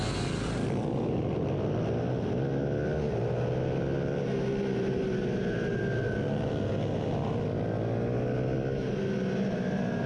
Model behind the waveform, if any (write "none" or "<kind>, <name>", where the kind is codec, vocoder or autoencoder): none